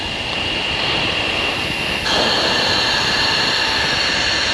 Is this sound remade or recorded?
recorded